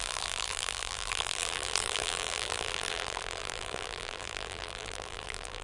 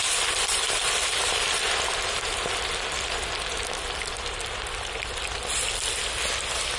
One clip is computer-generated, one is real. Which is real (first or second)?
second